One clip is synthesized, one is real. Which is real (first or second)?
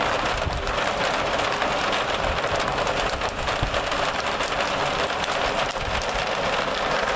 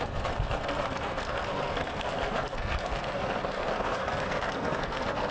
first